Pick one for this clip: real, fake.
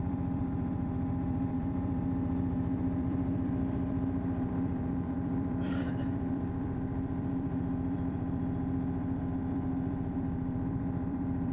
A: fake